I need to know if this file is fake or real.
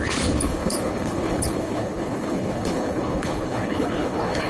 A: fake